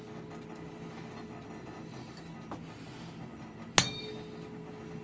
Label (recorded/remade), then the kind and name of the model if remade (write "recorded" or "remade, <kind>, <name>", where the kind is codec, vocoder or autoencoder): recorded